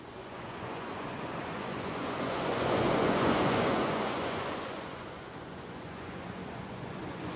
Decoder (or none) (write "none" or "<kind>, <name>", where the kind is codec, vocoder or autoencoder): vocoder, Vocos